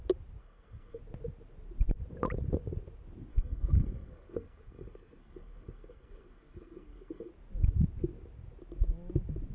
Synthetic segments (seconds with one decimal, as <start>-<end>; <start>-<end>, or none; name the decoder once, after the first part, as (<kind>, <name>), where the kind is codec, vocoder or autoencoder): 0.4-1.0 (codec, SNAC); 3.3-7.3